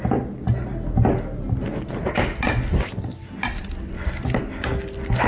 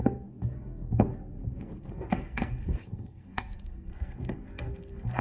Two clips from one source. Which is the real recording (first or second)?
first